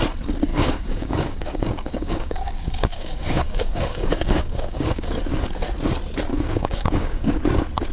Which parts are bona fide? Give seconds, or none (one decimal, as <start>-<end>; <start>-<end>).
0.0-0.5; 5.2-6.3; 7.4-7.9